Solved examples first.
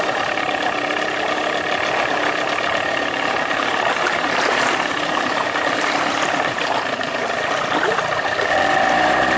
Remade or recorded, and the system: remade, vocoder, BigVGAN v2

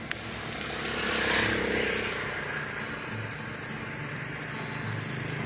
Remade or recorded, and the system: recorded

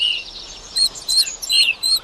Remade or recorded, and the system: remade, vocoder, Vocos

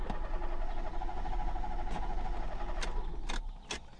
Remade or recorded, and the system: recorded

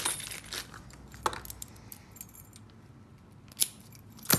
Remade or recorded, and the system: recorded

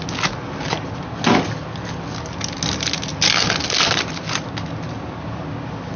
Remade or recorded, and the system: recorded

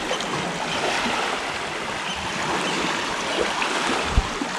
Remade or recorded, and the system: recorded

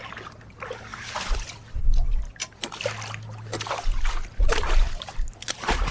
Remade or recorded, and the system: recorded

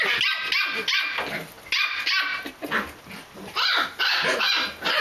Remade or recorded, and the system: recorded